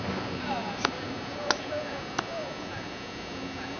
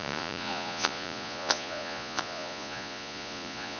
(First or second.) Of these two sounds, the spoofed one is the second